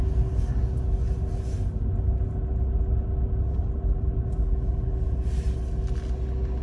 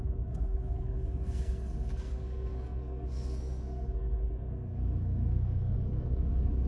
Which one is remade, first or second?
second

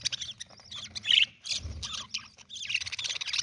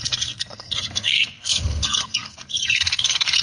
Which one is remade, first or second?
second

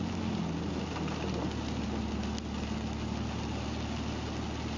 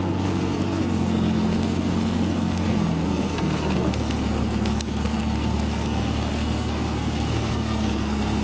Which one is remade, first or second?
second